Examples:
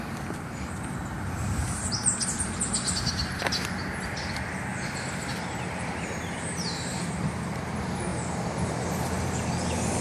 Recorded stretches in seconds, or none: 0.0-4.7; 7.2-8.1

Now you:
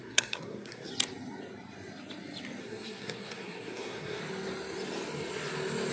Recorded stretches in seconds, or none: 0.9-2.6; 4.2-5.9

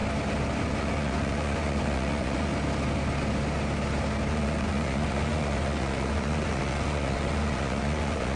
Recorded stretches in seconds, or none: 0.0-0.6; 2.5-4.3

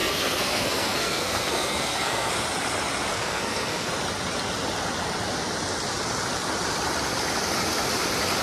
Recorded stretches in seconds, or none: 2.3-3.1; 3.9-8.4

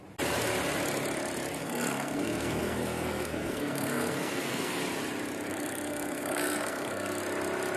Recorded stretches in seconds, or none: 0.0-1.6; 4.8-5.5; 7.2-7.8

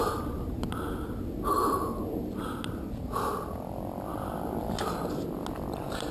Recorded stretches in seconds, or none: 0.0-6.1